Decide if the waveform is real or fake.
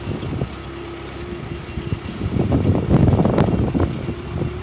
real